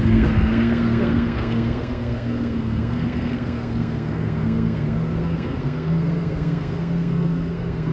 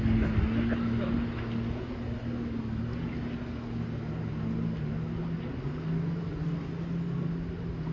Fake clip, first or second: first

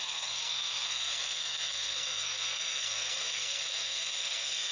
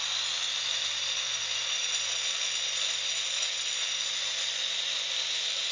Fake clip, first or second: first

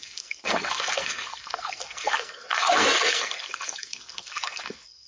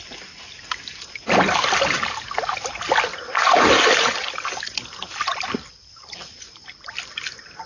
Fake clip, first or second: first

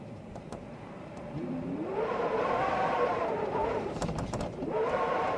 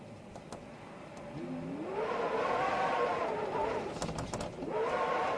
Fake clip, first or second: first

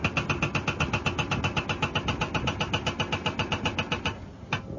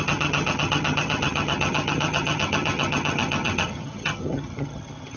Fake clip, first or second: second